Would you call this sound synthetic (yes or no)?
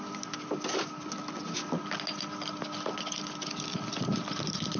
no